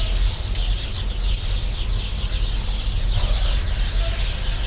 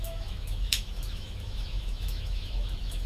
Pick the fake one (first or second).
second